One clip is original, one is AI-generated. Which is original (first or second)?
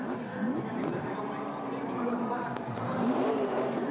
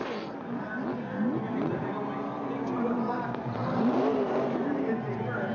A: second